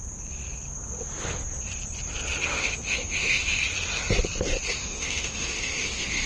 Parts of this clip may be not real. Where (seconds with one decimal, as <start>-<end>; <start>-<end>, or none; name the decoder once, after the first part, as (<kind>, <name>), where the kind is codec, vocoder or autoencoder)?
2.5-3.6 (autoencoder, DAC-VAE); 4.8-6.3